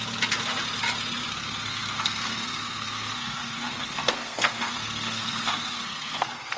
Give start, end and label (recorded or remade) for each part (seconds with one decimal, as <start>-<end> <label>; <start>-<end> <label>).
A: 0.0-1.3 recorded; 1.3-6.6 remade